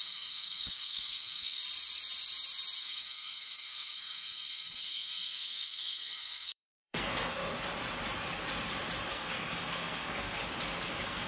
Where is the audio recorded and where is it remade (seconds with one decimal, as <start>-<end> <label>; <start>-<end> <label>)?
0.0-1.6 remade; 1.6-2.8 recorded; 2.8-7.4 remade; 7.4-9.1 recorded; 9.1-10.4 remade; 10.4-10.9 recorded; 10.9-11.3 remade